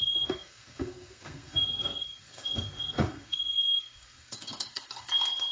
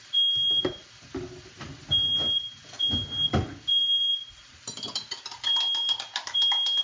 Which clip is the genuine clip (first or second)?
second